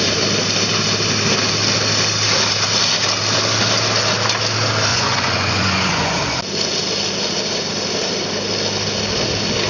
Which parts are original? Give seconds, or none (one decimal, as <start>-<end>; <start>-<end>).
0.0-4.9; 6.4-9.7